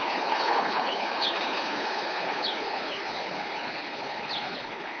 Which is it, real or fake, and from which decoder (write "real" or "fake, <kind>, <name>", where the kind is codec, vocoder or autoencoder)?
fake, codec, HILCodec